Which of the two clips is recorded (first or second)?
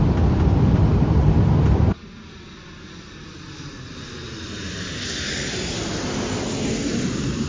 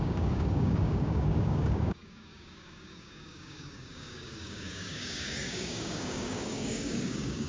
first